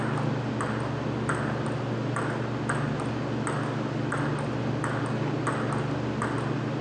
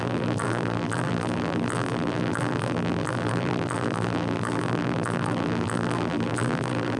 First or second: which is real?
first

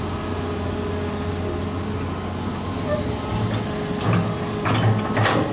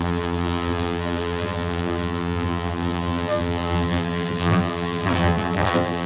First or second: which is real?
first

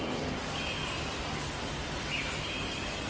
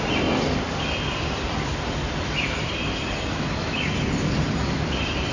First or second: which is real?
first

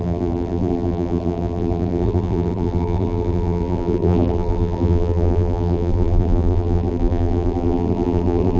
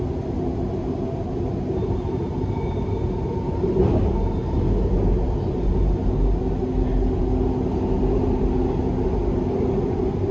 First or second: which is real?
second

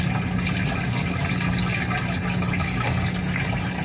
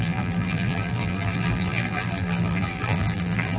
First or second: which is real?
first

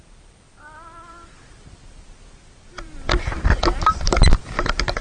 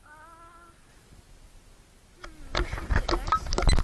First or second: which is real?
second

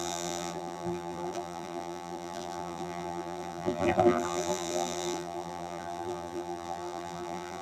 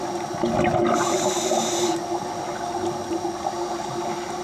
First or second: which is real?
second